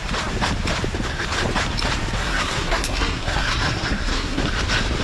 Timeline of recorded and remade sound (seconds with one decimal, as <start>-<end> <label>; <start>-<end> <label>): 0.0-2.2 recorded; 2.2-4.4 remade; 4.4-5.0 recorded